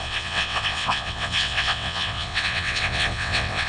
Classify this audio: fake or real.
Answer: fake